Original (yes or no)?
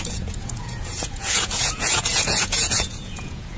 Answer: no